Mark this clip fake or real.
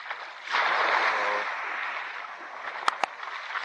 real